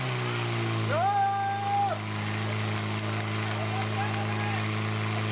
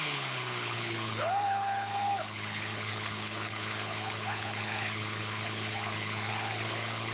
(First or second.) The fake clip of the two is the second